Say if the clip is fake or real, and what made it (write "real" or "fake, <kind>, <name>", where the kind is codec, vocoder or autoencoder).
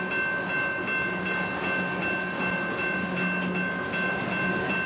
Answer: real